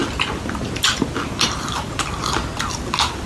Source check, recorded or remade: recorded